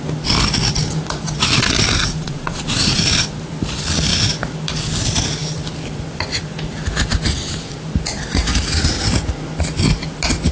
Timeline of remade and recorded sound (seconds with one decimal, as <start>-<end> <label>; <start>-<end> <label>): 0.0-2.0 recorded; 2.0-3.0 remade; 3.0-10.5 recorded